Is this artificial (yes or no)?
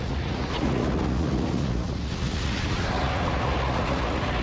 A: yes